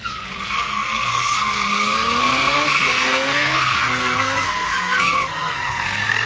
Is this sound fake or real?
fake